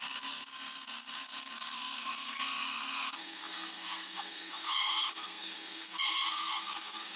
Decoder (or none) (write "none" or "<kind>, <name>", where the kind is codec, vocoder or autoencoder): codec, SNAC